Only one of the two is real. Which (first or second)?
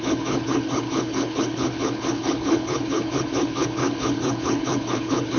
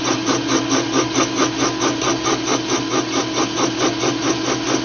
second